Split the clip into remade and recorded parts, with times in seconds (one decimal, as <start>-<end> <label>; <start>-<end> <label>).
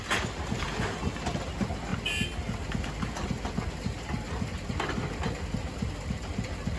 0.0-6.8 recorded